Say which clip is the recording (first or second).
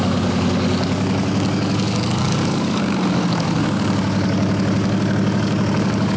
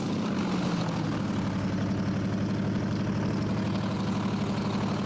second